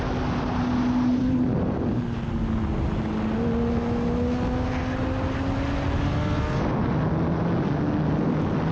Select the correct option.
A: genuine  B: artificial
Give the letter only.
A